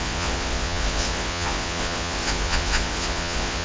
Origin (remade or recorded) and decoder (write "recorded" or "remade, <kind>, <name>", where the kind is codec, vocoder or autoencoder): remade, vocoder, Vocos